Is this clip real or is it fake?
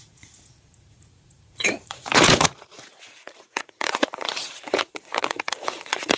fake